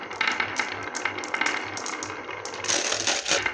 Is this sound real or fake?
real